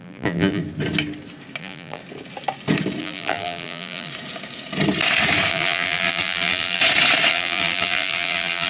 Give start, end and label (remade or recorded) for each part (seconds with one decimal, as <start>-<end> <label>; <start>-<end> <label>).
0.0-0.6 remade; 0.6-1.6 recorded; 1.6-2.0 remade; 2.0-3.0 recorded; 3.0-4.1 remade; 4.1-5.5 recorded; 5.5-6.8 remade; 6.8-7.3 recorded; 7.3-8.7 remade